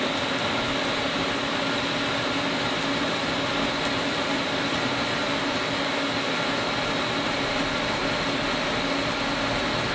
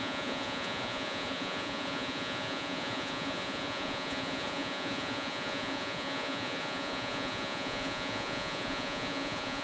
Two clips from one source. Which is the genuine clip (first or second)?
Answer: first